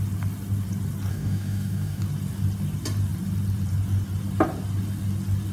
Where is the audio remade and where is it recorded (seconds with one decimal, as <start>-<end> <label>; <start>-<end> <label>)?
0.0-1.1 recorded; 1.1-2.0 remade; 2.0-5.5 recorded